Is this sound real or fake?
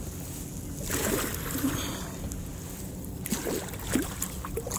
real